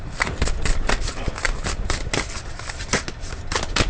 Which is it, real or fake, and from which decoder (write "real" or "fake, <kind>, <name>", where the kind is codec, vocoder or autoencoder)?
real